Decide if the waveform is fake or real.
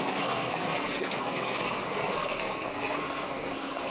fake